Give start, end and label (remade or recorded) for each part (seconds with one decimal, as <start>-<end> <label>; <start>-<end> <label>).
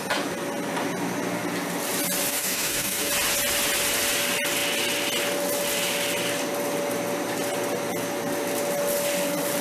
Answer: 0.0-2.3 recorded; 2.3-3.1 remade; 3.1-9.6 recorded